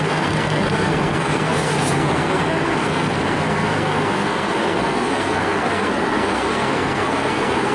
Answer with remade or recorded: remade